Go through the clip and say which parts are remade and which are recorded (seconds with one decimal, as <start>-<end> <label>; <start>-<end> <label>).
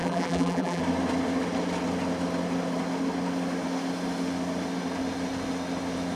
0.0-0.8 remade; 0.8-6.2 recorded